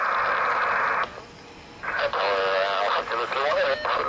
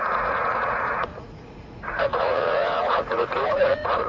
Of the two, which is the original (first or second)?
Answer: first